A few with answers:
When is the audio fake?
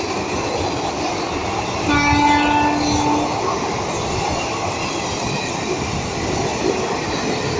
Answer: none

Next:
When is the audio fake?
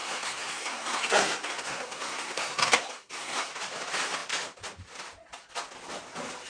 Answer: 0.0-3.5 (codec, SNAC)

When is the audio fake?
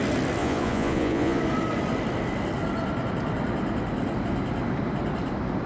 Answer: 0.4-1.4 (vocoder, Vocos)